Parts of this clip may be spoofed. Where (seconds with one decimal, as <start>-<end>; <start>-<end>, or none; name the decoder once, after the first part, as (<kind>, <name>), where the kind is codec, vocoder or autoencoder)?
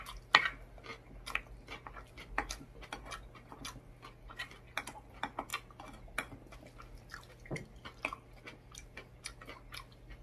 none